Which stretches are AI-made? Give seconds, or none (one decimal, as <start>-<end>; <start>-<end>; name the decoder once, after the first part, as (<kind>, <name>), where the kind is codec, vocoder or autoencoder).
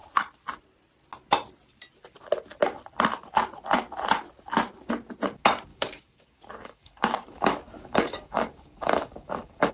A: 5.7-9.7 (codec, DAC)